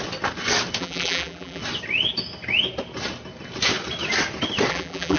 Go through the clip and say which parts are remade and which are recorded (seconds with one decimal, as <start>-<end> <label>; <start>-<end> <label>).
0.0-0.8 recorded; 0.8-1.6 remade; 1.6-4.7 recorded; 4.7-5.2 remade